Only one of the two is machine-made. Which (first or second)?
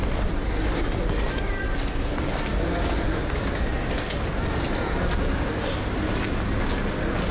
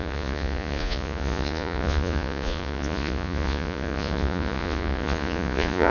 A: second